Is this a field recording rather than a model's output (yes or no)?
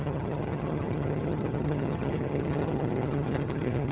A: no